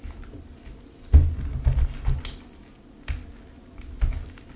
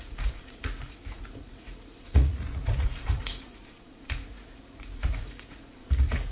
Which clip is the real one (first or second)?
first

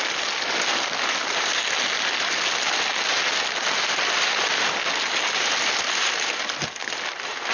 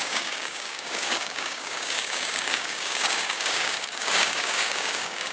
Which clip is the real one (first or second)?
first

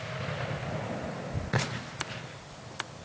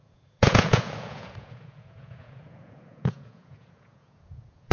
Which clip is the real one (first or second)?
first